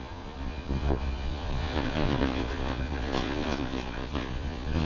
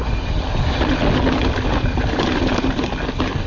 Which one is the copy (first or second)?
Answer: first